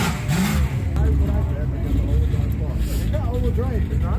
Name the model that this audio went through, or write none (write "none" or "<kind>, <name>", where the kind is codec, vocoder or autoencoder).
none